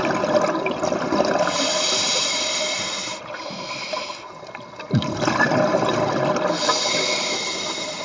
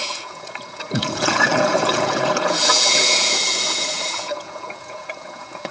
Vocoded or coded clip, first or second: second